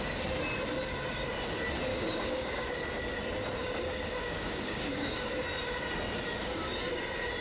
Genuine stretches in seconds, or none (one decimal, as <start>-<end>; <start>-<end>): 0.0-1.9; 2.7-3.6; 5.4-6.4; 6.9-7.4